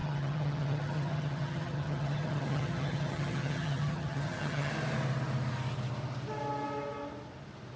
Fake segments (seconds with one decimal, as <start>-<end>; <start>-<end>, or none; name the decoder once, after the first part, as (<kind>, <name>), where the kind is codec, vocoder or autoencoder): 0.0-4.7 (vocoder, HiFi-GAN)